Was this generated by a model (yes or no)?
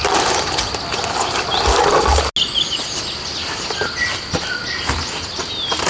no